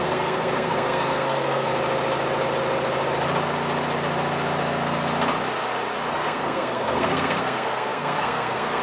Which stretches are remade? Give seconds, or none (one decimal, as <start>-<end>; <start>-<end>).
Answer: 0.0-1.7; 6.1-8.8